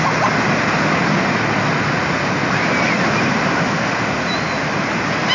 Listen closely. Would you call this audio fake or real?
real